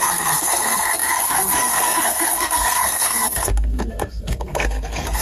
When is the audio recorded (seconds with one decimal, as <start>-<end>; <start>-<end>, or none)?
none